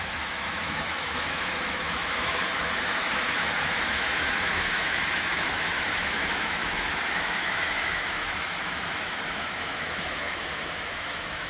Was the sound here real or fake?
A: fake